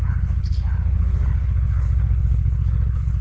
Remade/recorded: remade